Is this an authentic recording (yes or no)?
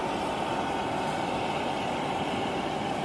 yes